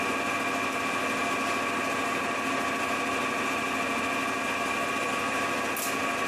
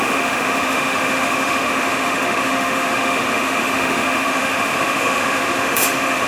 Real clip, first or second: first